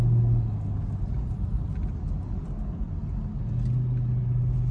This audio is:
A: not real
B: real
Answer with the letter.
B